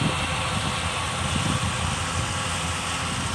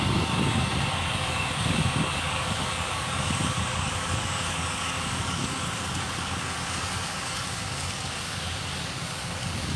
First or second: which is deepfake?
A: second